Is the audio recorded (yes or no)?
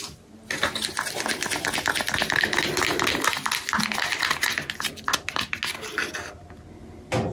yes